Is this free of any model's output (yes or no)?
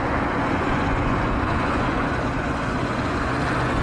no